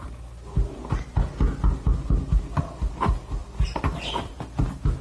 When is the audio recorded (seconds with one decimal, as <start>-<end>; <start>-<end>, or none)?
0.0-5.0